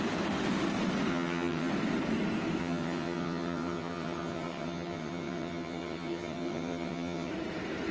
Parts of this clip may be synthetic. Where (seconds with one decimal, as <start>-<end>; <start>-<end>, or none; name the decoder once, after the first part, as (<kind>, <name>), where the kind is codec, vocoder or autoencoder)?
1.1-1.7 (vocoder, HiFi-GAN); 2.6-7.3